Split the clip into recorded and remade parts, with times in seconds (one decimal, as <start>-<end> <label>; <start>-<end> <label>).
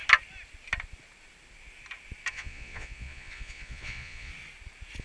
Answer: 0.0-2.3 recorded; 2.3-4.3 remade; 4.3-5.0 recorded